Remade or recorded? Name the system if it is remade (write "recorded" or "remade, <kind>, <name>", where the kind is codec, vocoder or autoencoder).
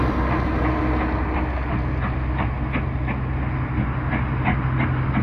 recorded